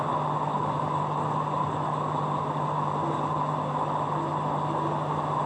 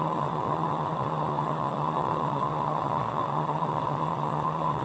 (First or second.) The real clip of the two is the first